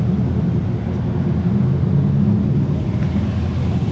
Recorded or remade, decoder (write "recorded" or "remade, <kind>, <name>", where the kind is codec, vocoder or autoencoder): recorded